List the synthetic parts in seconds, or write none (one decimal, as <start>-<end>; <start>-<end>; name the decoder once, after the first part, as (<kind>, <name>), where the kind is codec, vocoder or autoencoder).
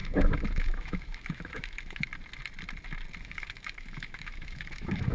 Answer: 0.0-2.1 (autoencoder, DAC-VAE); 3.2-5.1